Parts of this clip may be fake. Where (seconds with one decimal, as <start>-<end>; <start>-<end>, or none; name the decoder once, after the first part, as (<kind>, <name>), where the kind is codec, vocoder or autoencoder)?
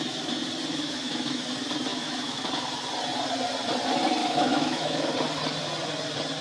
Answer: 0.7-1.4 (autoencoder, DAC-VAE); 1.9-2.5; 4.2-5.1